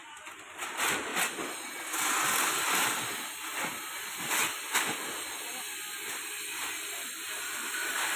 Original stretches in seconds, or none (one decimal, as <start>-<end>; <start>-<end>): 0.0-1.1; 1.7-4.4; 7.4-8.2